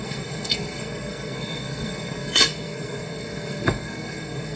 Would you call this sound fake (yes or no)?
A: yes